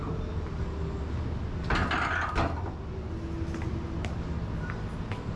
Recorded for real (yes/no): yes